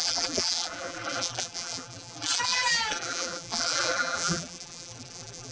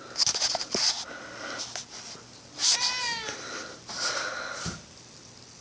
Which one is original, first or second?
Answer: second